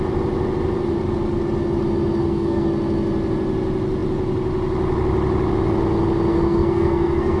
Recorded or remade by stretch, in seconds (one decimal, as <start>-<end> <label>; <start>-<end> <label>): 0.0-2.2 recorded; 2.2-2.7 remade; 2.7-6.3 recorded; 6.3-7.4 remade